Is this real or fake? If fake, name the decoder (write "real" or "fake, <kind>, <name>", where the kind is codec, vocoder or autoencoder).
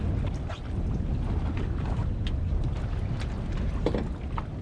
real